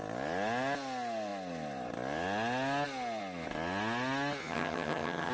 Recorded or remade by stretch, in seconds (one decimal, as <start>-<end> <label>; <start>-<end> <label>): 0.0-4.4 recorded; 4.4-5.3 remade